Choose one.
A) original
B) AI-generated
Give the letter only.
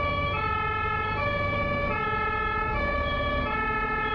B